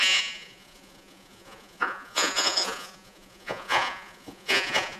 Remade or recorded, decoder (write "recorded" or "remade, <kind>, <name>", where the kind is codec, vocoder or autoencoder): remade, vocoder, Vocos